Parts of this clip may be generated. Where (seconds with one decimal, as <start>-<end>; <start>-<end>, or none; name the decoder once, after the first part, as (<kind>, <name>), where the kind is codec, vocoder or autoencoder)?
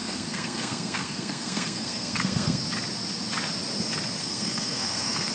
0.0-2.6 (codec, SNAC); 4.2-5.3